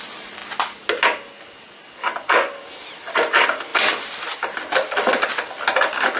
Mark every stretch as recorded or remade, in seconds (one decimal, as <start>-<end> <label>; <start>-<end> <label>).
0.0-6.2 recorded